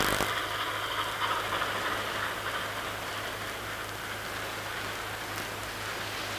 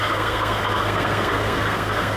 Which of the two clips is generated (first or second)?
second